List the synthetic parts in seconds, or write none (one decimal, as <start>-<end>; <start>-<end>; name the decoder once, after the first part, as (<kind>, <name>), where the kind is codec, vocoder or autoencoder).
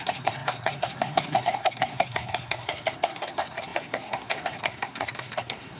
0.0-5.8 (codec, SNAC)